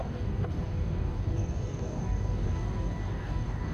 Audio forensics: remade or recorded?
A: remade